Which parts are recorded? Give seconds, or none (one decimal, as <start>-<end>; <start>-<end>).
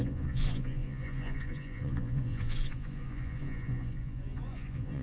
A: none